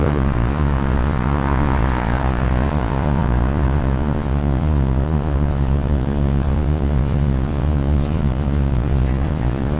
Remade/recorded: remade